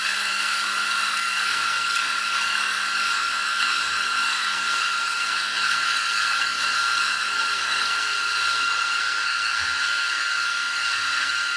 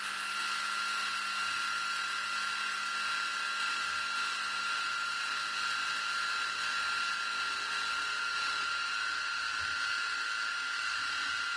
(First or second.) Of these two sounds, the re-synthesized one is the first